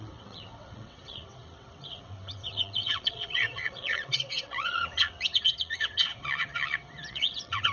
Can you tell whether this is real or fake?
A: fake